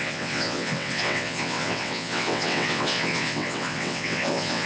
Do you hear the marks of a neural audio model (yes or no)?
yes